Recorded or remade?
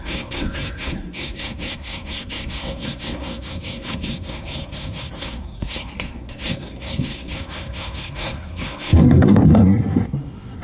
remade